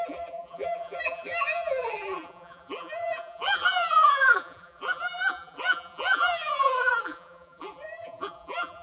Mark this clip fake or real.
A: fake